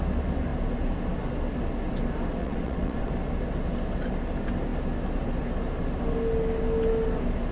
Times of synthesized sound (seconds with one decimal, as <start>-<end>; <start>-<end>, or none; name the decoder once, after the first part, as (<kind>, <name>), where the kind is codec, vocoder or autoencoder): 2.4-3.1 (vocoder, WaveNeXt)